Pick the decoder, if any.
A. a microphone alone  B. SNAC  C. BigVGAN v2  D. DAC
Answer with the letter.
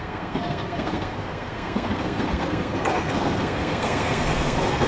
B